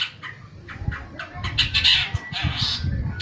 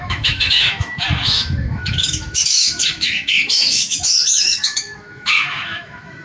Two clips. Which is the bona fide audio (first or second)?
first